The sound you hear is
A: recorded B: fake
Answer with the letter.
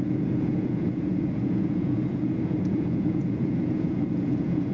B